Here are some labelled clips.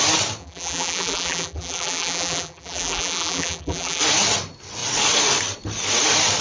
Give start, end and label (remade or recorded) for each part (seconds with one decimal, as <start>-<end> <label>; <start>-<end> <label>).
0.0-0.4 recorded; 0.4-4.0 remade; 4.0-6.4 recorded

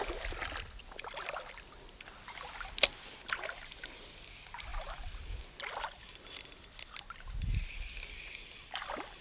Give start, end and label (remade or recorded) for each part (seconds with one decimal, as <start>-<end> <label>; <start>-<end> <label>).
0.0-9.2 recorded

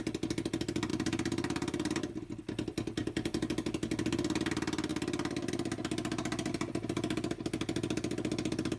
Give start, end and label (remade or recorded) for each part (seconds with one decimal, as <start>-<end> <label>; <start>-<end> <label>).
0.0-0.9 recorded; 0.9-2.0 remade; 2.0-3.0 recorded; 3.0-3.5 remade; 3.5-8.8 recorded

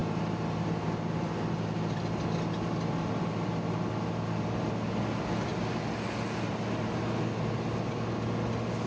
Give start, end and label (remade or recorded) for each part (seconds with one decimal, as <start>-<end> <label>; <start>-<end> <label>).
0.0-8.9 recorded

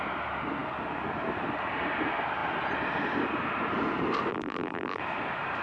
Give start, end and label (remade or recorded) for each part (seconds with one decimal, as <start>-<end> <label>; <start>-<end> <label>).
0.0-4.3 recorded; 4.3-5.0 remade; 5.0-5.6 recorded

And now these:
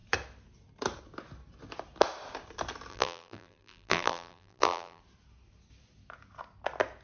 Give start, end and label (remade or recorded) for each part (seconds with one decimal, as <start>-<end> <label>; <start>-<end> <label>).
0.0-2.9 recorded; 2.9-5.0 remade; 5.0-7.0 recorded

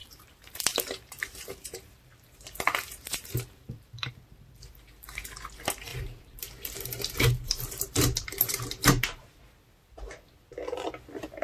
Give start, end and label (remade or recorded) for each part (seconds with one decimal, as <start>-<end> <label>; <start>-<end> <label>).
0.0-4.1 remade; 4.1-5.9 recorded; 5.9-9.2 remade; 9.2-11.4 recorded